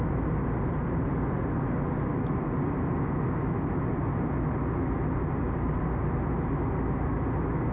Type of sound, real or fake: real